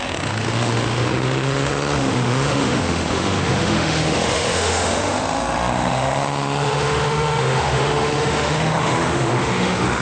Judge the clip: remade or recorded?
remade